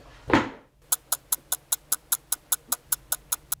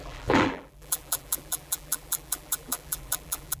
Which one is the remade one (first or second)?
second